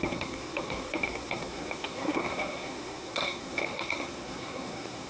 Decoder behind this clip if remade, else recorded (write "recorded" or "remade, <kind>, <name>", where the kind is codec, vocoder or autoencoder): remade, codec, SNAC